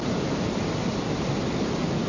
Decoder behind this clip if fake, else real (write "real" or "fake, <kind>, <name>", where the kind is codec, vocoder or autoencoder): real